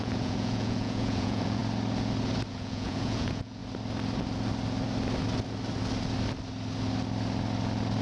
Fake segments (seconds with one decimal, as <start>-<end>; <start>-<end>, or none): 0.0-1.6; 2.5-3.6